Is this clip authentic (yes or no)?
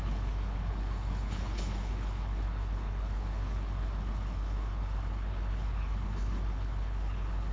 no